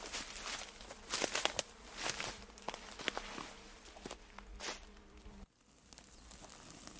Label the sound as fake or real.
real